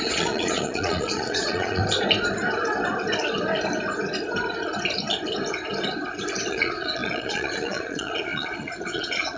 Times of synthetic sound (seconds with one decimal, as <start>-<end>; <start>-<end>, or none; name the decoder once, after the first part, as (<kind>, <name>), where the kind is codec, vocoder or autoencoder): 0.0-1.8 (vocoder, Vocos); 6.5-9.4